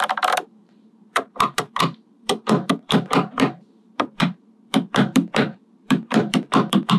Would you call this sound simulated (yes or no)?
yes